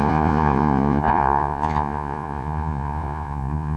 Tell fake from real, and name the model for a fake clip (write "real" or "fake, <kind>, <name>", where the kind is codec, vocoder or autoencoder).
fake, vocoder, Vocos